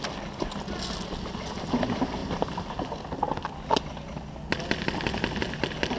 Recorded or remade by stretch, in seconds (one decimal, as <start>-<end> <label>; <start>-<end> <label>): 0.0-6.0 recorded